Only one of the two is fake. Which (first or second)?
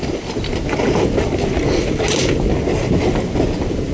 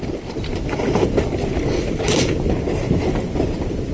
second